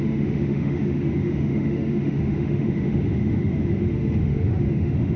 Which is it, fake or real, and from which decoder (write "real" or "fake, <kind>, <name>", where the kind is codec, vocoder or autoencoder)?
fake, autoencoder, DAC-VAE